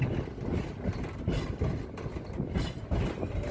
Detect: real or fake real